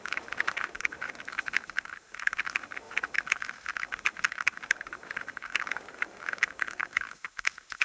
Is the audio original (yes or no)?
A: no